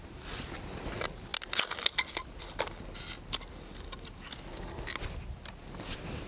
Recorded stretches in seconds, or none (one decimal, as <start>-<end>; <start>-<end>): 0.0-6.3